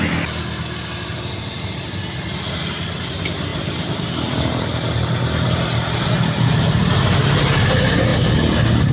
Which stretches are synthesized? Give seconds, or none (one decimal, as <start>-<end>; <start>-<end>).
3.5-7.7